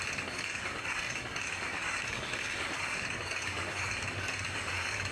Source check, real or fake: fake